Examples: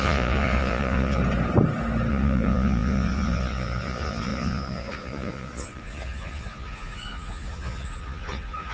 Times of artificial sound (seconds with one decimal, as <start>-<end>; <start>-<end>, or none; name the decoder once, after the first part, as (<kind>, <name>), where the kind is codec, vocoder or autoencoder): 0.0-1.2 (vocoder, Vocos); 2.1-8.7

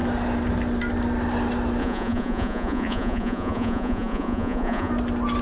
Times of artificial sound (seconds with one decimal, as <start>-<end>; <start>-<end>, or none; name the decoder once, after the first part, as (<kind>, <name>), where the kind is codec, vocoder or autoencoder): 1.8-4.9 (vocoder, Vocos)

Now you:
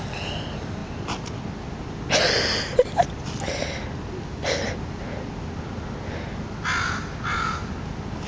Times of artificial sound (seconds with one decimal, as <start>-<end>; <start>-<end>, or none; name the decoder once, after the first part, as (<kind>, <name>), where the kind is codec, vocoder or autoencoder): none

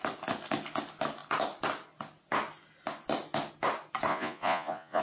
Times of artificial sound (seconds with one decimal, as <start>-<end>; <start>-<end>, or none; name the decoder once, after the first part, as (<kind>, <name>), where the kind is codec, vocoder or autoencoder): 4.1-5.0 (vocoder, Vocos)

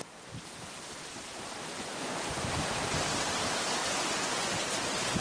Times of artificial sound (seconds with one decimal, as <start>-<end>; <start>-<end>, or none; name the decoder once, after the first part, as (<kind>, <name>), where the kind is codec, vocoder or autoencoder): 1.7-2.5 (vocoder, Vocos); 3.8-4.5

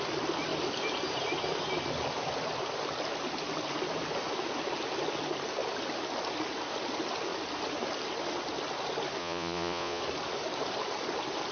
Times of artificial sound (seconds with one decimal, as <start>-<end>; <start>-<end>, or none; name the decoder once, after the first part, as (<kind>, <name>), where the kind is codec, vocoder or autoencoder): 9.2-10.0 (vocoder, Vocos)

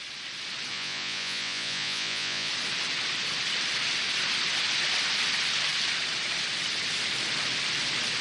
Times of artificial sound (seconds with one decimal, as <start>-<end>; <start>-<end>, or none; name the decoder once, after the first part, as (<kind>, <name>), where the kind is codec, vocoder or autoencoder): 0.7-2.5 (vocoder, Vocos)

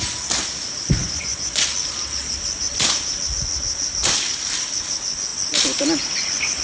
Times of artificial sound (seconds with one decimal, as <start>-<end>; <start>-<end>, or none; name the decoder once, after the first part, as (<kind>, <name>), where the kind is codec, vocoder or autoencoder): 1.0-1.6 (vocoder, Vocos)